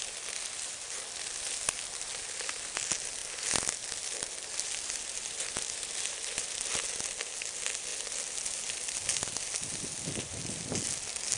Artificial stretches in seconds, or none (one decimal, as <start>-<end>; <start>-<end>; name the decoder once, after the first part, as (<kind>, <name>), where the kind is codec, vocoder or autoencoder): none